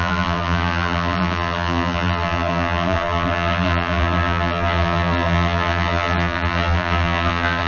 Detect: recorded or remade remade